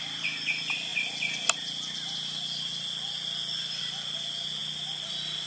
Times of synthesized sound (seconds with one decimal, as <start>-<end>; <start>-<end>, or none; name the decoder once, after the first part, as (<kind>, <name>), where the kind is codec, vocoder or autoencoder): none